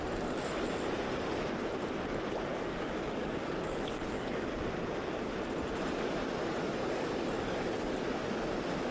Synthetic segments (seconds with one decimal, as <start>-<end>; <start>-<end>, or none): 2.5-4.5; 6.8-8.0